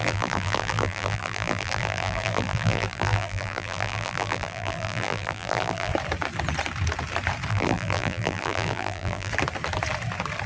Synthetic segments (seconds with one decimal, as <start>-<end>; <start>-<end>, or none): 0.0-5.9; 7.5-9.3